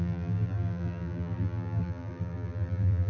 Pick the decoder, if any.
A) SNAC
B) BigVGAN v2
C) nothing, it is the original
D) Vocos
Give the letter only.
B